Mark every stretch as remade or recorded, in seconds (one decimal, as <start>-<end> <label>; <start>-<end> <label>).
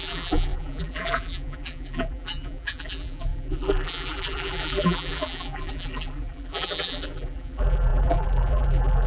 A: 0.0-9.1 remade